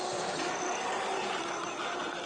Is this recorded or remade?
recorded